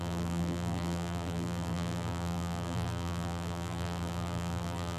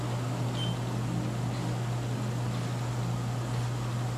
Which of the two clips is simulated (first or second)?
first